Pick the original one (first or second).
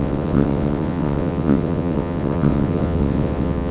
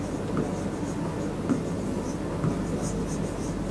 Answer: second